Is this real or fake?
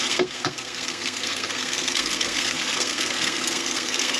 fake